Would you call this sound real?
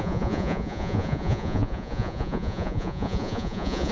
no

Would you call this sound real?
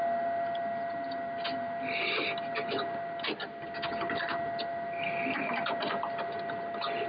yes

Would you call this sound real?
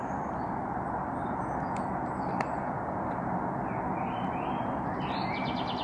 yes